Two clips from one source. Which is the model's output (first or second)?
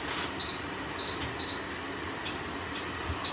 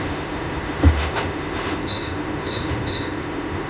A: second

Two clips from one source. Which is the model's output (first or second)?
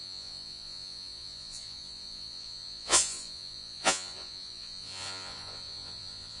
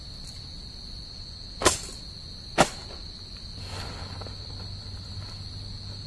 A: first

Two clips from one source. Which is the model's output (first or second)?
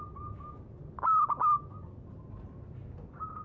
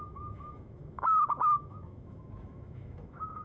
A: second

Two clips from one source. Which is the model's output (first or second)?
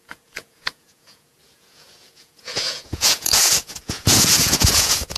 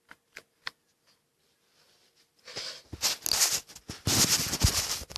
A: first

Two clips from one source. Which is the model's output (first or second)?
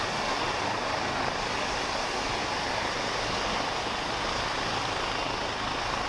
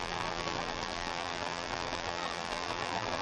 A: second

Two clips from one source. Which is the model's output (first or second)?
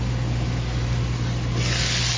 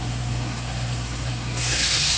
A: second